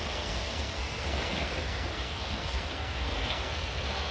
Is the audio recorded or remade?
remade